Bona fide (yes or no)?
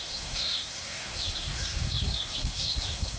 no